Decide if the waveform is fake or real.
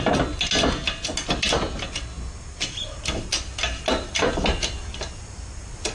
real